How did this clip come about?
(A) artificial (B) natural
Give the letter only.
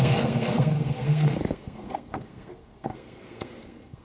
A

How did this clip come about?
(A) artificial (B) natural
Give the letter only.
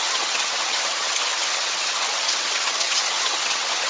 A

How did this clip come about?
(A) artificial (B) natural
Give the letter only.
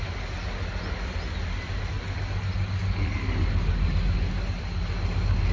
B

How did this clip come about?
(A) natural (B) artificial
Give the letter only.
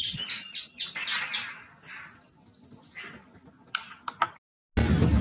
A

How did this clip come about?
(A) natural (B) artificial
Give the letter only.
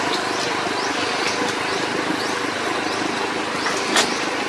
A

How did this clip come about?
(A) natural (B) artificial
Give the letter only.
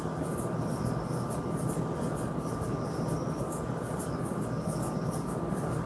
A